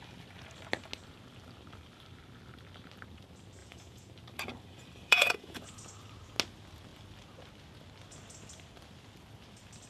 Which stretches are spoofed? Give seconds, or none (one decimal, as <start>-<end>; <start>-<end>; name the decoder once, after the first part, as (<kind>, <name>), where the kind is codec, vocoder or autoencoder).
3.6-4.1 (vocoder, Vocos); 5.1-5.7